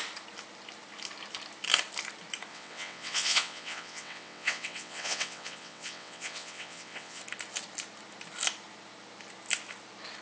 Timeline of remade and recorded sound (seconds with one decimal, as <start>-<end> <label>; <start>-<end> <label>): 0.0-2.5 recorded; 2.5-7.2 remade; 7.2-10.2 recorded